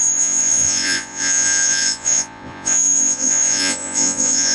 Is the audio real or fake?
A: fake